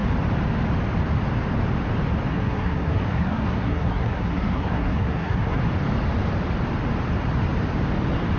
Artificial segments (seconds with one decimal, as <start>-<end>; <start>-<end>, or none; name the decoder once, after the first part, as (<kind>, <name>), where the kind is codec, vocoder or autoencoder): 2.3-5.6 (codec, SNAC)